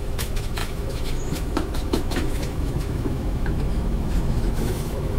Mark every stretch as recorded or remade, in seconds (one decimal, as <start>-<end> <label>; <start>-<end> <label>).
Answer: 0.0-5.2 remade